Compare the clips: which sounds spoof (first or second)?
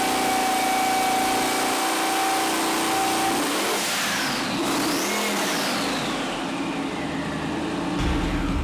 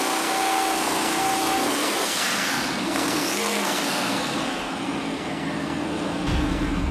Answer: second